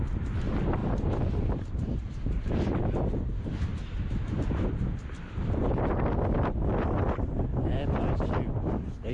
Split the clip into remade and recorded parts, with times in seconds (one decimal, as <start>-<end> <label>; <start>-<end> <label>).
0.0-0.8 recorded; 0.8-2.5 remade; 2.5-9.1 recorded